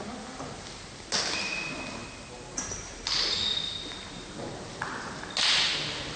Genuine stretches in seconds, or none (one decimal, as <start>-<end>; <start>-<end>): 0.0-6.2